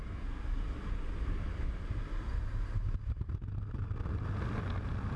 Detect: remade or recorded recorded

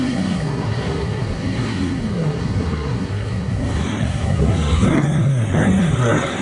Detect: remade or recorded remade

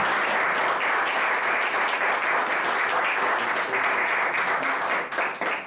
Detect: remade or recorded recorded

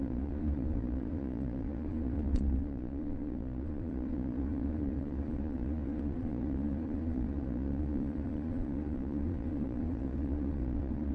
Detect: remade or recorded remade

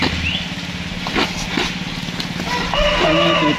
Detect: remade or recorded recorded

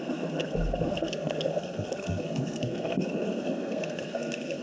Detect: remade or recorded remade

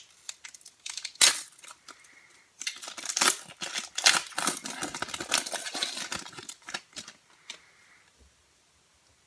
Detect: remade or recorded recorded